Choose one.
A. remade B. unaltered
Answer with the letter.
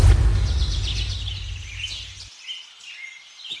B